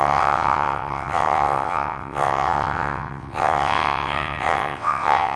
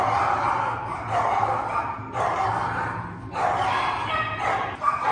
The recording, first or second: second